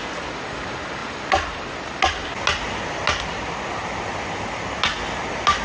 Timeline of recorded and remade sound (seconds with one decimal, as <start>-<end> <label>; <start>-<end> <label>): 0.0-5.6 recorded